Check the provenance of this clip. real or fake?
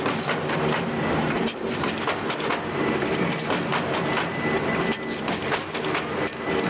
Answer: real